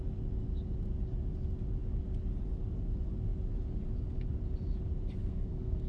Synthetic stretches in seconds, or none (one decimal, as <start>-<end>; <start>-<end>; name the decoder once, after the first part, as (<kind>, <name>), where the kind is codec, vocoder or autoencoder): 5.2-5.9 (codec, SNAC)